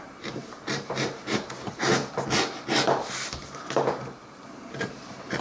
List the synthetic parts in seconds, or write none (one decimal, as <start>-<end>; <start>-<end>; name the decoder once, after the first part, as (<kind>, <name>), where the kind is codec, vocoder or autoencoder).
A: 0.0-2.0 (vocoder, BigVGAN v2); 2.7-5.4